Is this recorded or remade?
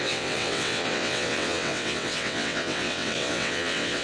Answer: remade